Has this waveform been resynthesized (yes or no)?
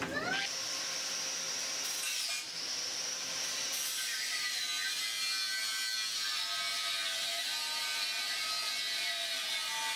no